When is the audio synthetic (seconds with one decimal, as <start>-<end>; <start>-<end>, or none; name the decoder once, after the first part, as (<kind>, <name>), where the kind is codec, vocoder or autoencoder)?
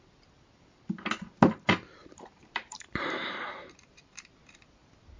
2.0-4.1 (vocoder, BigVGAN v2)